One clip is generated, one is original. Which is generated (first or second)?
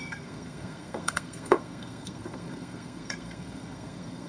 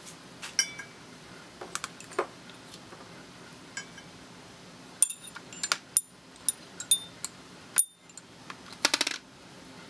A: first